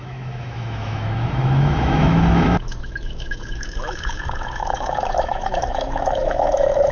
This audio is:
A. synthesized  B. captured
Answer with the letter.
A